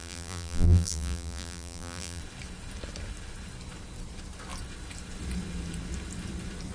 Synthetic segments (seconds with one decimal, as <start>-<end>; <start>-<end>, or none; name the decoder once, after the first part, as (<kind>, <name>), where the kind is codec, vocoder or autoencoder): 0.0-2.2 (vocoder, BigVGAN v2)